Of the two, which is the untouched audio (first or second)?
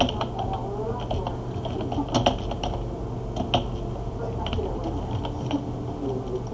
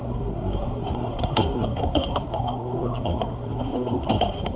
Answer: first